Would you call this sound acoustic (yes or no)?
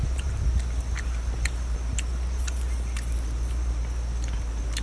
yes